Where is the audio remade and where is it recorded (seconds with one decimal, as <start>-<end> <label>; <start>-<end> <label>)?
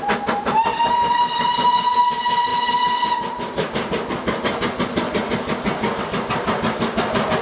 0.0-0.7 recorded; 0.7-2.0 remade; 2.0-7.4 recorded